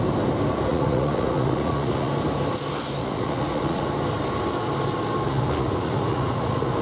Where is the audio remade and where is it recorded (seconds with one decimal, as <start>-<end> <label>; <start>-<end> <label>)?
0.0-0.7 recorded; 0.7-2.1 remade; 2.1-3.0 recorded; 3.0-3.8 remade; 3.8-5.3 recorded; 5.3-6.8 remade